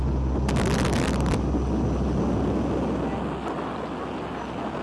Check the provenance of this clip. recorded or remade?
recorded